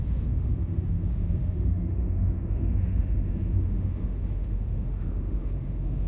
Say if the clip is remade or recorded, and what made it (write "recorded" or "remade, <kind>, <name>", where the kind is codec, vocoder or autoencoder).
remade, autoencoder, DAC-VAE